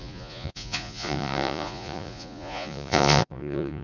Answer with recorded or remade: remade